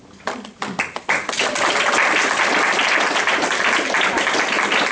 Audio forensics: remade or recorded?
recorded